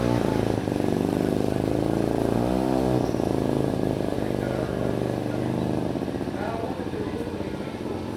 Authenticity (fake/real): real